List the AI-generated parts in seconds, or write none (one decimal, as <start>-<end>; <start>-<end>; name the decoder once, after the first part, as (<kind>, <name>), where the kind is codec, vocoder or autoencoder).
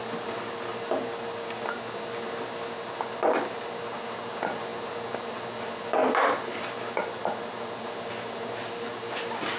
none